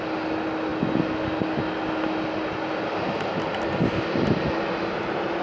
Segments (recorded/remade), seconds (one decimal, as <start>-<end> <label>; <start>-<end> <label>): 0.0-5.4 recorded